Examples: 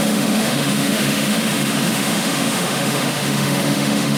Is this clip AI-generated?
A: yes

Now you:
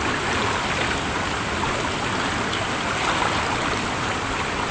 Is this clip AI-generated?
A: no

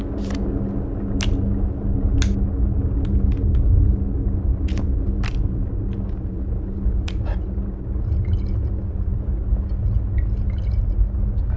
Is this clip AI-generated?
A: no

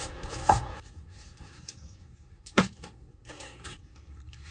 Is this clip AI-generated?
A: yes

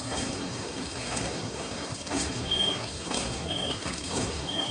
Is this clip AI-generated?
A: yes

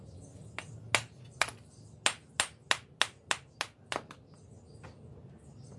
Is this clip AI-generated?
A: no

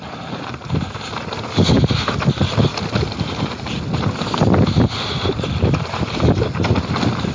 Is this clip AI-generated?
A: no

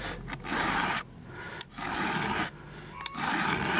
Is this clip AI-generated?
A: no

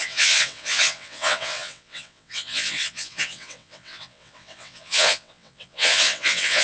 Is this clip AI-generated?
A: yes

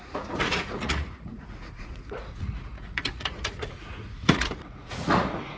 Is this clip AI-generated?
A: yes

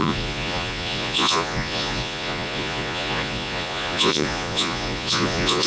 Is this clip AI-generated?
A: yes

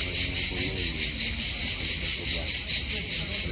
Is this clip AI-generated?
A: no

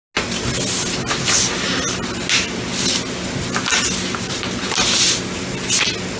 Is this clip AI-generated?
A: no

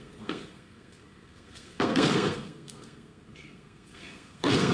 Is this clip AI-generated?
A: yes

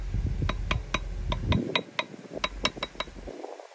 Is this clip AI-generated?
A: no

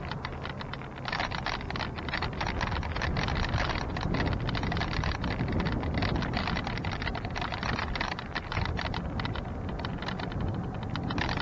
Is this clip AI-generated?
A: no